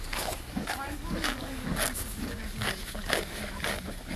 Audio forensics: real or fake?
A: fake